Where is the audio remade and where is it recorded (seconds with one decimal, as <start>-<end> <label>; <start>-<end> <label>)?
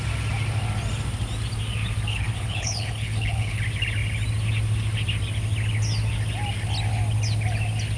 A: 0.0-2.1 recorded; 2.1-3.6 remade; 3.6-8.0 recorded